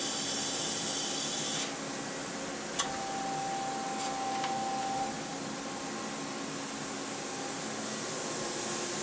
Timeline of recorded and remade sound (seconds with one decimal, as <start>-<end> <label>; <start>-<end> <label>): 0.0-9.0 recorded

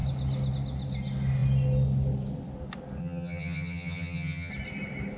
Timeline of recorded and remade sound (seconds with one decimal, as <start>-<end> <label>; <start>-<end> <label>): 0.0-3.0 recorded; 3.0-4.5 remade; 4.5-5.2 recorded

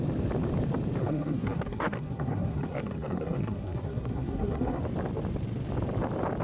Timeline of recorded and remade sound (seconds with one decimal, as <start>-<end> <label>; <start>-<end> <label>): 0.0-1.0 recorded; 1.0-4.8 remade; 4.8-6.4 recorded

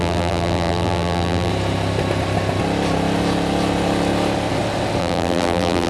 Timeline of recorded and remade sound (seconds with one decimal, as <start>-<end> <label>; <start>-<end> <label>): 0.0-1.5 remade; 1.5-5.0 recorded; 5.0-5.9 remade

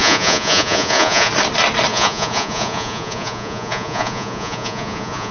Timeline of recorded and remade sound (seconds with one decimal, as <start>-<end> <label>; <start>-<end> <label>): 0.0-1.3 remade; 1.3-1.9 recorded; 1.9-5.3 remade

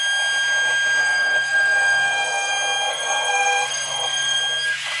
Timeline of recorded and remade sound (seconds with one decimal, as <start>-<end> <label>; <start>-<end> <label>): 0.0-1.0 recorded; 1.0-2.5 remade; 2.5-2.9 recorded; 2.9-4.4 remade; 4.4-5.0 recorded

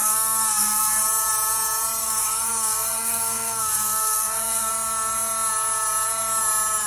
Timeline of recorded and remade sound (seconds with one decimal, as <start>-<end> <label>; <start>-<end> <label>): 0.0-1.0 remade; 1.0-2.0 recorded; 2.0-4.7 remade; 4.7-6.9 recorded

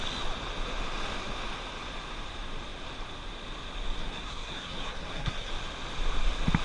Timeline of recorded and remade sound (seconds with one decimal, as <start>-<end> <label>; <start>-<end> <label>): 0.0-4.0 recorded; 4.0-5.5 remade; 5.5-6.6 recorded